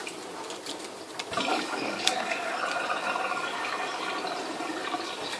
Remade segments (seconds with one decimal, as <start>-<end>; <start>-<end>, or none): 1.5-2.5